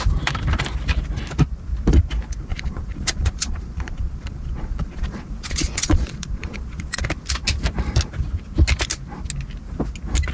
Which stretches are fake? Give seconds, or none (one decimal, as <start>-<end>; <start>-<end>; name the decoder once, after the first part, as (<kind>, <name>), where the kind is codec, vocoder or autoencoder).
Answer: 2.5-7.0 (vocoder, Vocos)